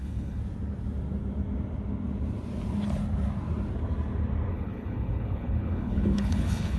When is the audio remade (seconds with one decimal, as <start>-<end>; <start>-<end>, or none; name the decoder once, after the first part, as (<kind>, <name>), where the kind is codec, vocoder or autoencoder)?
0.0-0.4 (codec, HILCodec); 4.5-6.8

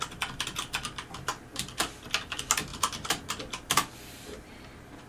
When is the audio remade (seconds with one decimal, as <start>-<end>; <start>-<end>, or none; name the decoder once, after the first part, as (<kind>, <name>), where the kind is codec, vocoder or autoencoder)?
1.5-2.3 (vocoder, BigVGAN v2); 2.7-3.7

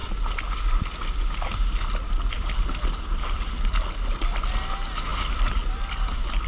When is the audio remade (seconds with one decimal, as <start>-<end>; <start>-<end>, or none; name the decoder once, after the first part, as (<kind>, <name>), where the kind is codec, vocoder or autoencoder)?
none